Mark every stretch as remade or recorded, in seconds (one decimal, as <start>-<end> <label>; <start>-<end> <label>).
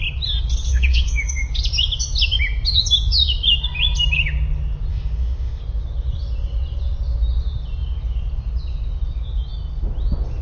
0.0-0.7 recorded; 0.7-1.5 remade; 1.5-4.9 recorded; 4.9-5.6 remade; 5.6-10.4 recorded